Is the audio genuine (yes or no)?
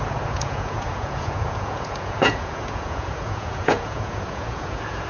no